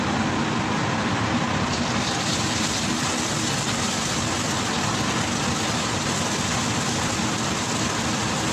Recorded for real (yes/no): yes